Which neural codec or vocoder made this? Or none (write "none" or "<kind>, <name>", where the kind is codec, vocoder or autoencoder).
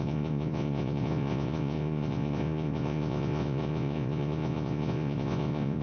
vocoder, Vocos